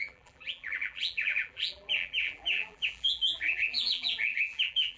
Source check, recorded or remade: remade